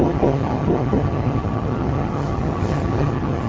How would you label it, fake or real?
fake